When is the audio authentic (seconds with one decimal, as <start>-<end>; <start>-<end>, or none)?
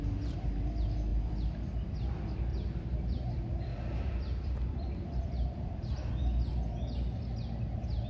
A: 0.0-1.1; 2.1-2.5; 3.3-3.7; 6.1-8.1